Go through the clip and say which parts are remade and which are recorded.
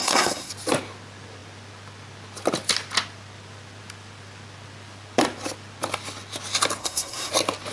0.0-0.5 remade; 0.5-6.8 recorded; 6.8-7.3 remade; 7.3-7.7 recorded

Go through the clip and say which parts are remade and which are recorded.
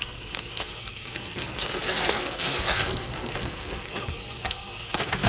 0.0-5.3 remade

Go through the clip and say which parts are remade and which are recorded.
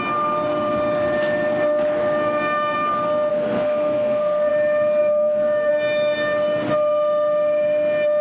0.0-3.3 recorded; 3.3-4.5 remade; 4.5-5.0 recorded; 5.0-5.7 remade; 5.7-8.2 recorded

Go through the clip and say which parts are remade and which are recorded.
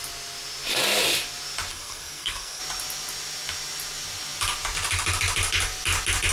0.0-1.7 recorded; 1.7-2.6 remade; 2.6-6.3 recorded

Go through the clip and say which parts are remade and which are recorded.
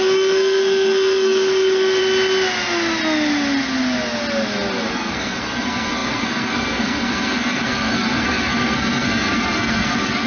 0.0-2.0 remade; 2.0-4.8 recorded; 4.8-10.3 remade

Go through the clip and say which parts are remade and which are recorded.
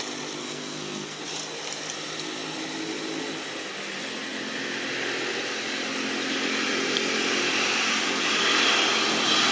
0.0-0.4 recorded; 0.4-1.2 remade; 1.2-9.5 recorded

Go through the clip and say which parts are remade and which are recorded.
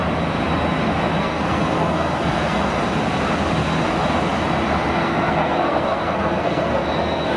0.0-1.2 recorded; 1.2-2.7 remade; 2.7-4.9 recorded; 4.9-7.4 remade